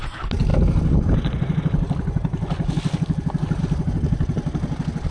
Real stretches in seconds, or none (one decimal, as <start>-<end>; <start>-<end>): 0.0-5.1